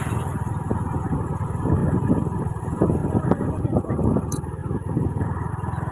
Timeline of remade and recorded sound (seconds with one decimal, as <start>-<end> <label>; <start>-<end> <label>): 0.0-3.0 remade; 3.0-4.0 recorded; 4.0-5.9 remade